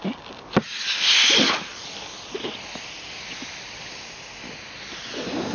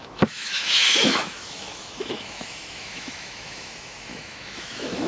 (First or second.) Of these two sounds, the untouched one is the first